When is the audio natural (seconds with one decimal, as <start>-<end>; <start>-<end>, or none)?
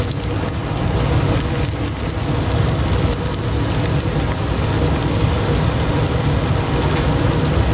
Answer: 0.0-7.7